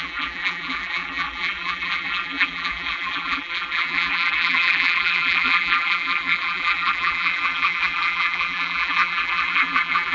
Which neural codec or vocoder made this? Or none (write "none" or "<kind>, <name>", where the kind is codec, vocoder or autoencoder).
vocoder, BigVGAN v2